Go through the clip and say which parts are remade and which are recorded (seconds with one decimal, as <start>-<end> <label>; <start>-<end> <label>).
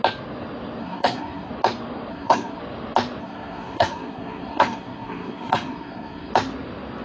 0.0-0.8 recorded; 0.8-1.5 remade; 1.5-2.1 recorded; 2.1-2.6 remade; 2.6-3.2 recorded; 3.2-6.3 remade; 6.3-7.0 recorded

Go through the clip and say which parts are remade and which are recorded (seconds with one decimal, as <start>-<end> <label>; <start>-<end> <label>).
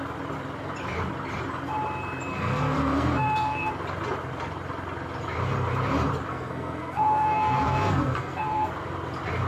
0.0-2.3 recorded; 2.3-3.7 remade; 3.7-6.3 recorded; 6.3-8.7 remade; 8.7-9.5 recorded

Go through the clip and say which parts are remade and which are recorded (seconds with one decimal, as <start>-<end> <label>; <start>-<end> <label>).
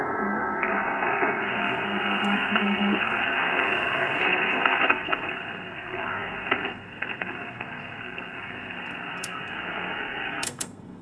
0.0-11.0 remade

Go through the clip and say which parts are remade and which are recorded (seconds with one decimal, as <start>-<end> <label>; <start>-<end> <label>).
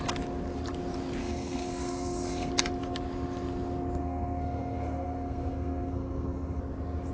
0.0-1.2 recorded; 1.2-2.5 remade; 2.5-4.0 recorded; 4.0-6.6 remade; 6.6-7.1 recorded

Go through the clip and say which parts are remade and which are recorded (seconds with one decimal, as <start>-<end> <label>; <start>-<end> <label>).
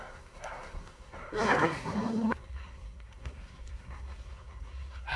0.0-5.2 remade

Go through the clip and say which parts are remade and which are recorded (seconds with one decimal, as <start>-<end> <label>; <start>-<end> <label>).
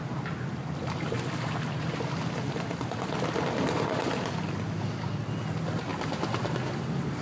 0.0-7.2 recorded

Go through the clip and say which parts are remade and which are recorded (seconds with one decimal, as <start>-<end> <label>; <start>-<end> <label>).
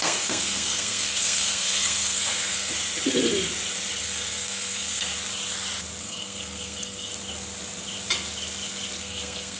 0.0-2.7 remade; 2.7-4.0 recorded; 4.0-5.1 remade; 5.1-6.0 recorded; 6.0-7.1 remade; 7.1-9.0 recorded; 9.0-9.6 remade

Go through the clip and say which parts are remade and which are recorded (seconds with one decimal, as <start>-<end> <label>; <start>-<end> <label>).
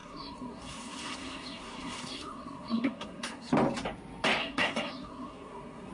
0.0-3.5 remade; 3.5-4.4 recorded; 4.4-5.9 remade